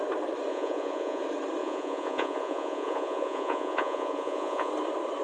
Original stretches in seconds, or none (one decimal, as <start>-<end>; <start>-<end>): 0.0-0.5; 1.2-1.6; 4.7-5.2